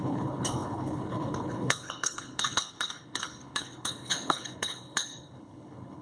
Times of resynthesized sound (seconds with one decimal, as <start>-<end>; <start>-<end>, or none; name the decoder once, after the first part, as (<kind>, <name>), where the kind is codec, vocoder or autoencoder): 0.0-6.0 (codec, HILCodec)